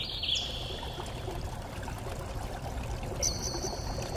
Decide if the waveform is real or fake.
real